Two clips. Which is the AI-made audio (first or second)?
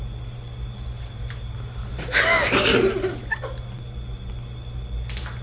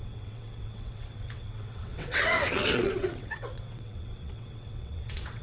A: second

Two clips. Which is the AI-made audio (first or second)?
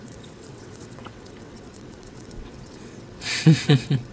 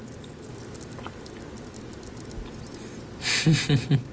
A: first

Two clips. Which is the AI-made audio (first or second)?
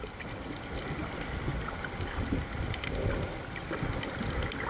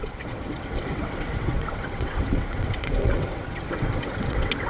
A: second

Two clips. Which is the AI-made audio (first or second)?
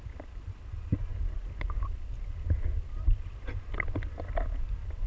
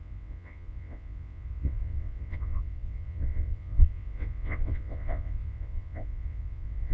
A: second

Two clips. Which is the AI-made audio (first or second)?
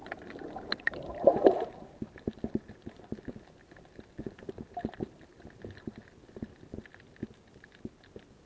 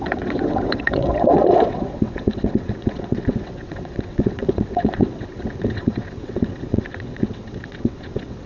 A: second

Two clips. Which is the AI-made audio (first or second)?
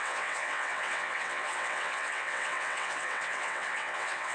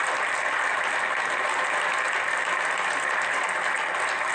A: first